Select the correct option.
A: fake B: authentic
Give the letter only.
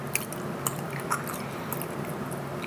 B